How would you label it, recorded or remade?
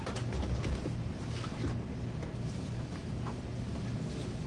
recorded